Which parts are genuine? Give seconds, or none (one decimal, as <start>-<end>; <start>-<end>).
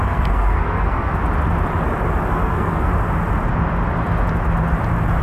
1.2-2.3; 2.9-5.2